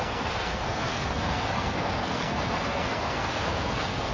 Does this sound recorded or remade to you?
remade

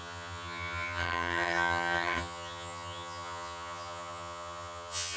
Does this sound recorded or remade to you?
remade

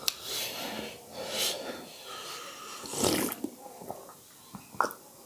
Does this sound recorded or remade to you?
recorded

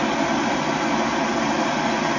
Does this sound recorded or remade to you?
recorded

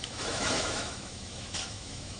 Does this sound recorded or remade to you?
remade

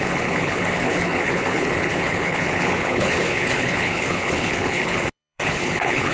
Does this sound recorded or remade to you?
remade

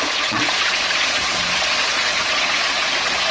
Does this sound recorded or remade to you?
remade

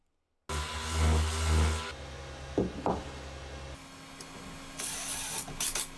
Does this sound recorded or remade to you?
recorded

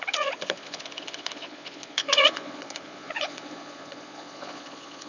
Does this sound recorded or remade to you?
remade